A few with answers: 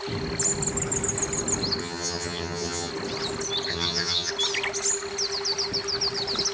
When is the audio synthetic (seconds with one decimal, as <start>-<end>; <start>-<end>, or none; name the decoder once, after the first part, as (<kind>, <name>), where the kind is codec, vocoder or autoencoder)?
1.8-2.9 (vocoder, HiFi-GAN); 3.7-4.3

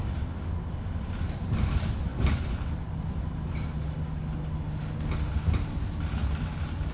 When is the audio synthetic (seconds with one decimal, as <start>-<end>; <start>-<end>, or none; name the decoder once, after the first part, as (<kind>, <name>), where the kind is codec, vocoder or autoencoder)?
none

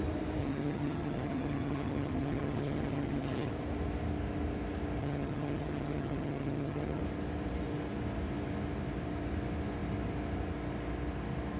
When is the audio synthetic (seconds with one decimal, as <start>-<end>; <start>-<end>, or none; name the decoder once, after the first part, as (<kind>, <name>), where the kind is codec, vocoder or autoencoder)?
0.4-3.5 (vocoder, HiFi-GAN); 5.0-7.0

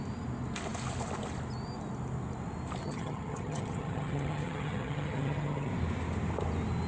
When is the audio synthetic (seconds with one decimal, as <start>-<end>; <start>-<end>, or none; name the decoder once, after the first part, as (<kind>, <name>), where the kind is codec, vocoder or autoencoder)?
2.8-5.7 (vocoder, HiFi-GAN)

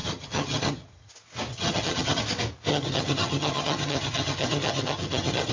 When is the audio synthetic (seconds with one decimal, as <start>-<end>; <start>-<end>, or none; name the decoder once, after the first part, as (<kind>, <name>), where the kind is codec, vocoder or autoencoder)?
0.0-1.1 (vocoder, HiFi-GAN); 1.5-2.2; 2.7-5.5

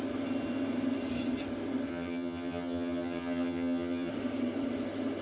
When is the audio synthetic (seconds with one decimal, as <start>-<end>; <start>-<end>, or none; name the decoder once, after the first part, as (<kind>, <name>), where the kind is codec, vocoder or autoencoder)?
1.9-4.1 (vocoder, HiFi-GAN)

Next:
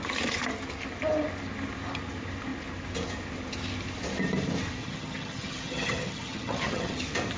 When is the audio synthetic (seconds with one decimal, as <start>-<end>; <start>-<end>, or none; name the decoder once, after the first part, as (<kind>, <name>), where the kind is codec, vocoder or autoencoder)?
4.8-7.0 (vocoder, HiFi-GAN)